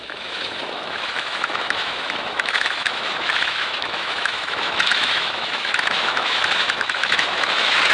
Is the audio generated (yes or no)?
yes